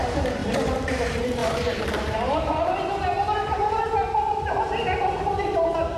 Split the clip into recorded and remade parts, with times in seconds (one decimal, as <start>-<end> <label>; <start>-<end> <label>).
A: 0.0-6.0 remade